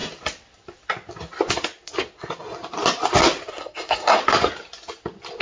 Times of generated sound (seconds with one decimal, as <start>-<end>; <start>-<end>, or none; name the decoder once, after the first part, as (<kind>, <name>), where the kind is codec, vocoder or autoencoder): 3.5-4.2 (codec, SNAC)